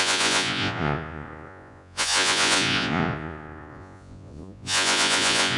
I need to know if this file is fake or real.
fake